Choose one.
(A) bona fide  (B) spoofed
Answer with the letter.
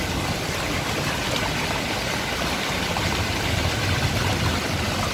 A